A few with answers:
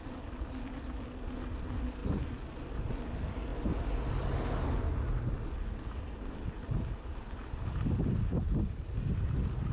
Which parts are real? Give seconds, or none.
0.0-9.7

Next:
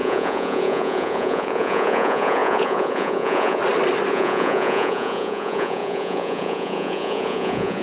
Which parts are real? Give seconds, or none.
3.6-4.1

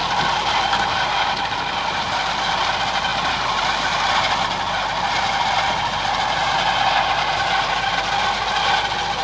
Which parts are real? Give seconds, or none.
0.0-9.2

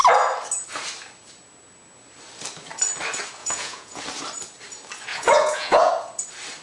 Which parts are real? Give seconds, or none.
0.0-3.4; 4.0-5.1; 5.9-6.6

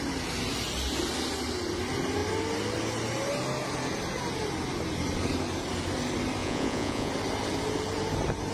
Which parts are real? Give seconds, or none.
0.0-6.4; 7.1-8.5